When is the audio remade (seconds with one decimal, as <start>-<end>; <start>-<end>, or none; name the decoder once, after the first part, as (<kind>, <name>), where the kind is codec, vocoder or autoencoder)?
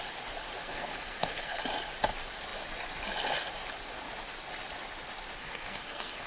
0.6-1.6 (codec, SNAC); 5.4-6.3